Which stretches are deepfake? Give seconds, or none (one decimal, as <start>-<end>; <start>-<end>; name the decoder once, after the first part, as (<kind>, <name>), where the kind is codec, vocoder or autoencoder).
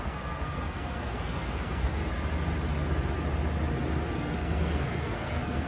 0.0-2.0 (codec, SNAC); 4.1-5.7